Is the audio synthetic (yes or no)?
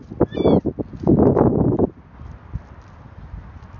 no